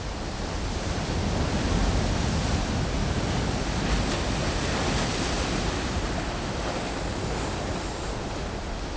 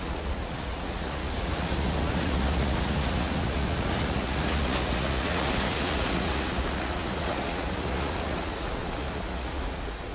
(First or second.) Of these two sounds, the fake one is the second